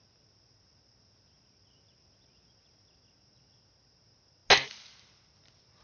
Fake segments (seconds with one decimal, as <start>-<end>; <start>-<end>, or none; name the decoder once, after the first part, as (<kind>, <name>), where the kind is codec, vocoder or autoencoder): none